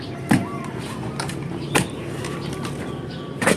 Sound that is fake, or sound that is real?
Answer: real